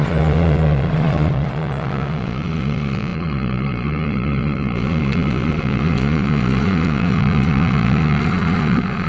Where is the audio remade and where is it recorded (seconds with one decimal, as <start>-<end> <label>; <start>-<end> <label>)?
0.0-9.1 remade